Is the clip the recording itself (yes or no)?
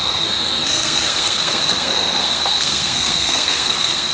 no